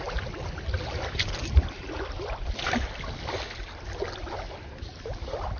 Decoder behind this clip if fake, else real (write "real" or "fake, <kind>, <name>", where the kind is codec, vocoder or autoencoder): real